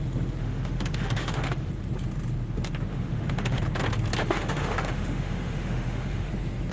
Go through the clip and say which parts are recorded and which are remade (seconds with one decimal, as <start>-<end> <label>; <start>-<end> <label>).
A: 0.0-0.4 recorded; 0.4-1.7 remade; 1.7-2.9 recorded; 2.9-3.6 remade; 3.6-4.2 recorded; 4.2-6.3 remade; 6.3-6.7 recorded